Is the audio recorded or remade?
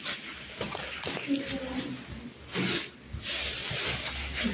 recorded